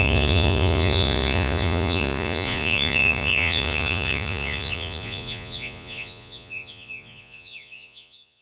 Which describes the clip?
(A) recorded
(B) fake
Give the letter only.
B